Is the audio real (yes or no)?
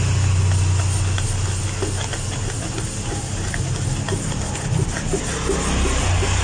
yes